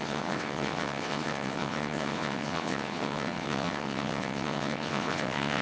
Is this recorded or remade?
remade